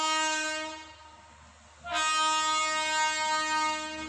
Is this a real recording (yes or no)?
yes